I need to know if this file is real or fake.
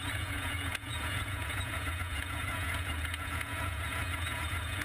fake